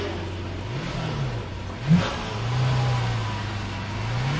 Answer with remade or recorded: recorded